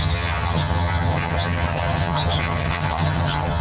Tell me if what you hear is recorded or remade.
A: remade